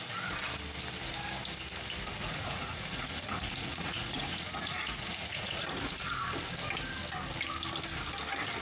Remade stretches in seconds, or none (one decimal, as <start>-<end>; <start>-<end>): 2.2-6.2